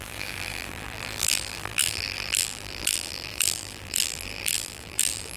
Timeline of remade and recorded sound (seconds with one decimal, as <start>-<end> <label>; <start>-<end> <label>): 0.0-5.4 remade